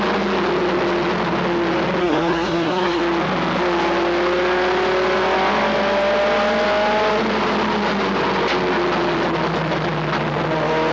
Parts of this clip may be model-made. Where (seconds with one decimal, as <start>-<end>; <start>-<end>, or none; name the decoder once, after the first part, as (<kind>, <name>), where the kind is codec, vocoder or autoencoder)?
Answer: 2.0-3.0 (codec, SNAC)